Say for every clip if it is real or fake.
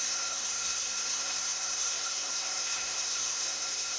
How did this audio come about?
fake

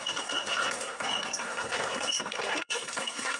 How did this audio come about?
fake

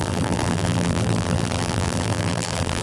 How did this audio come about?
fake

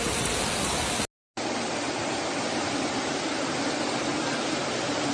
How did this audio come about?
real